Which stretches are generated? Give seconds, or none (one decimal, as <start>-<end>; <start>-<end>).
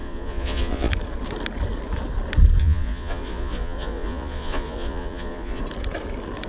0.0-0.9; 2.6-5.6